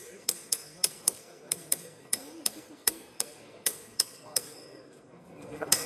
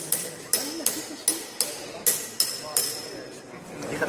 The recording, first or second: second